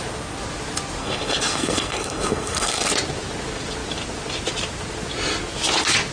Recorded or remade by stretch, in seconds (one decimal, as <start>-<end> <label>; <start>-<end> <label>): 0.0-1.0 recorded; 1.0-2.9 remade; 2.9-6.1 recorded